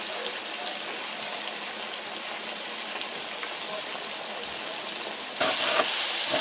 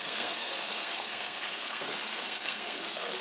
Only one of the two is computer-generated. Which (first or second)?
second